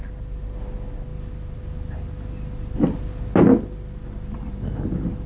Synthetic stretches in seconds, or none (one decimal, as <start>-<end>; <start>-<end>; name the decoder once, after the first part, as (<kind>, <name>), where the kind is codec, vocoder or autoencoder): none